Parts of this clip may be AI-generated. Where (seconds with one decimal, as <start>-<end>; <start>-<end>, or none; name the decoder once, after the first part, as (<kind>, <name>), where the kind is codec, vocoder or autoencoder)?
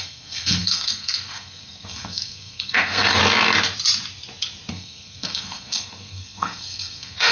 0.0-3.2 (codec, SNAC); 4.7-7.3